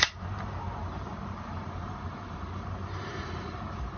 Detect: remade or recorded remade